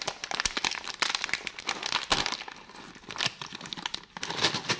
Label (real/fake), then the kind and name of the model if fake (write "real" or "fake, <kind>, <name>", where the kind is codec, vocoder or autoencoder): real